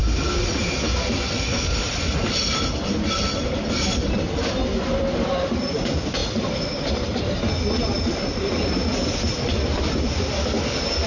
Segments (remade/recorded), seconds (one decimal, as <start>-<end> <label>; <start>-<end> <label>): 0.0-11.1 recorded

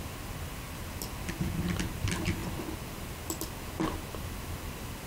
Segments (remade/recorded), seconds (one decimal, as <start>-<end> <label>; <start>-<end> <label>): 0.0-5.1 recorded

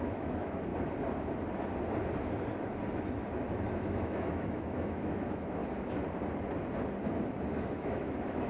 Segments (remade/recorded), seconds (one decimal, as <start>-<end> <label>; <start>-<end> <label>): 0.0-0.7 remade; 0.7-3.8 recorded; 3.8-5.6 remade; 5.6-7.5 recorded; 7.5-8.5 remade